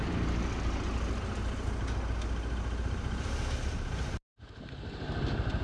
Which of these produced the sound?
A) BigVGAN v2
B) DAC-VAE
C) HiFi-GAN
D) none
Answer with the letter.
D